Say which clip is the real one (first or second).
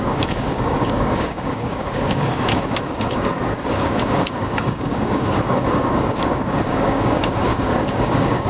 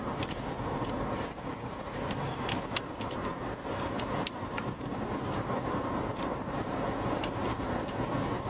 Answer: second